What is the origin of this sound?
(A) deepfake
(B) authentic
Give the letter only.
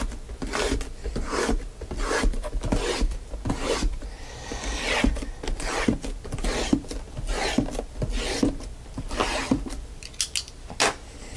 B